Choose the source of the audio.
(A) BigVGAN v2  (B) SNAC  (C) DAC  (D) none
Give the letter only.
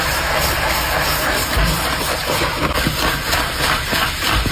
A